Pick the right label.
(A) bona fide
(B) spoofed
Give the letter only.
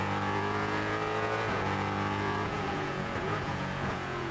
B